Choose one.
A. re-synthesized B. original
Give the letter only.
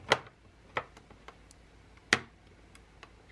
B